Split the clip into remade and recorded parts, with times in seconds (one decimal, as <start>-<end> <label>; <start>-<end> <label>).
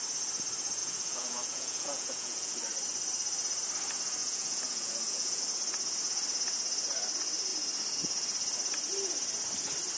0.0-0.8 recorded; 0.8-2.5 remade; 2.5-4.2 recorded; 4.2-5.4 remade; 5.4-10.0 recorded